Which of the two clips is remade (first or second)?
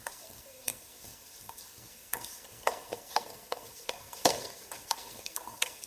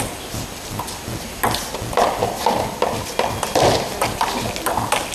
first